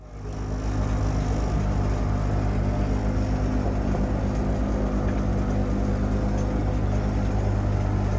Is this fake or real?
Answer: real